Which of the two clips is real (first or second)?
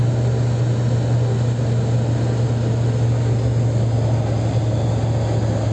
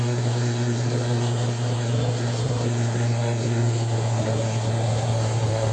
first